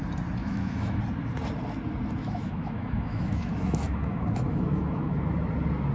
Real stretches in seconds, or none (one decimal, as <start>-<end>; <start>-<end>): 0.0-0.4; 1.0-2.2; 5.3-5.9